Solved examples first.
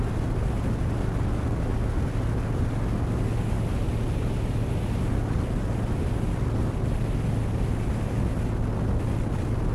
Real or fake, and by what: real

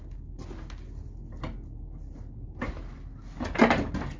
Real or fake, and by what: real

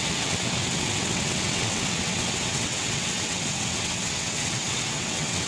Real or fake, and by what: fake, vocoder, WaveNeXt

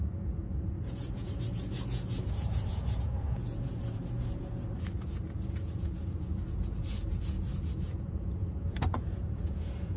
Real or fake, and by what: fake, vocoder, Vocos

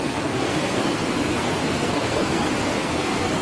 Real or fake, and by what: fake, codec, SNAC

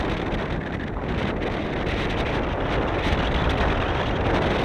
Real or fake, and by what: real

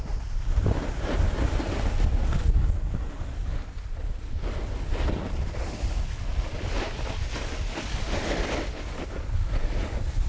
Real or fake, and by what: real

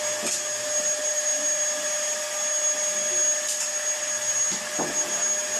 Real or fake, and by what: real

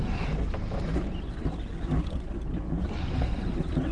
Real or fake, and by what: real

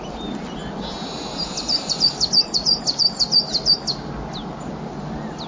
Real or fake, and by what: real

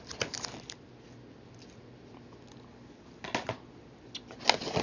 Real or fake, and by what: real